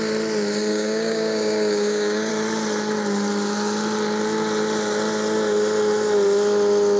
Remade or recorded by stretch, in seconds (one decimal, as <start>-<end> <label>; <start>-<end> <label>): 0.0-0.7 recorded; 0.7-2.3 remade; 2.3-7.0 recorded